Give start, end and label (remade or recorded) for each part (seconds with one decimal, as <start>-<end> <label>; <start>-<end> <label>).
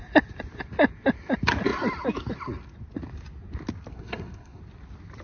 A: 0.0-3.9 recorded; 3.9-4.6 remade; 4.6-5.2 recorded